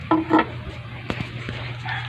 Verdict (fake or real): real